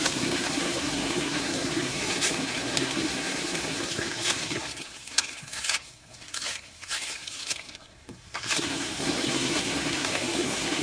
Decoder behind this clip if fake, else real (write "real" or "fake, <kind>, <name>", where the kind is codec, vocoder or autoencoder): fake, codec, SNAC